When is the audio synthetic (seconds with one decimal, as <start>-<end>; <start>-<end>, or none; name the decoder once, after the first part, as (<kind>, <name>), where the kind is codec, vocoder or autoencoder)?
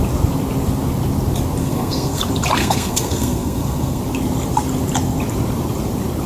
1.6-2.2 (codec, SNAC); 2.6-4.0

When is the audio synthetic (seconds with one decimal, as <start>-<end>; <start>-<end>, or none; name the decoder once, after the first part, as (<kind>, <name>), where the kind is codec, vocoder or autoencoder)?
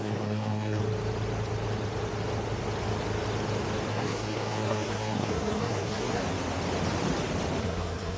0.0-0.8 (codec, SNAC); 3.9-6.2; 7.6-8.2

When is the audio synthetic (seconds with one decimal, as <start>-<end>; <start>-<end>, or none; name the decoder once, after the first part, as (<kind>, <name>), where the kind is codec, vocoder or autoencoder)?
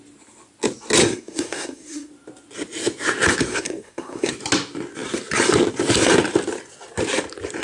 1.0-2.1 (codec, SNAC); 3.5-4.3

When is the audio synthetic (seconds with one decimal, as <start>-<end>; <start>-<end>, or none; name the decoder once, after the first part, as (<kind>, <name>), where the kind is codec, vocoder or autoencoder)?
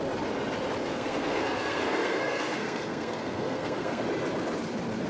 0.9-4.0 (codec, SNAC)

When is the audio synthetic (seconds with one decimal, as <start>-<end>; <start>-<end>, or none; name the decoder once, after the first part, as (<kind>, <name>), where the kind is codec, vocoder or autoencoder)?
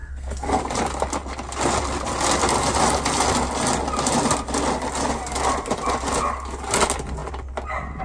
0.0-0.6 (codec, SNAC)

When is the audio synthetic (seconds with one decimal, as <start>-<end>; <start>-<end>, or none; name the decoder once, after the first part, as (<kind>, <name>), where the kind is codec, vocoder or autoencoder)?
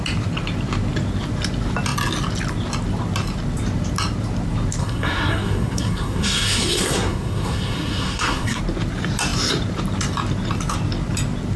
4.8-8.6 (codec, SNAC)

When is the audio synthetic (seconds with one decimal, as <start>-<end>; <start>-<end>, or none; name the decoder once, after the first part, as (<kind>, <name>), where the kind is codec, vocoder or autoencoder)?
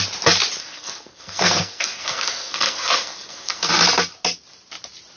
0.6-3.7 (codec, SNAC)